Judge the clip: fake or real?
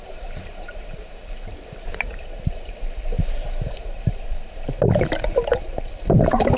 fake